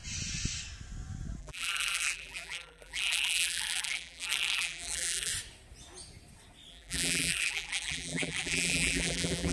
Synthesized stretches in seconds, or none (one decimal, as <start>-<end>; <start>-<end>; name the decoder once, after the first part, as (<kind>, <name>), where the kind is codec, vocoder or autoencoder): 1.4-5.3 (vocoder, BigVGAN v2); 6.7-9.5